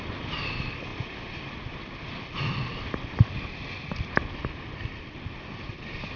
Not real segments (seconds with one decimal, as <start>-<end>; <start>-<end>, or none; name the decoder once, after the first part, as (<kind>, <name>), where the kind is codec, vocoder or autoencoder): none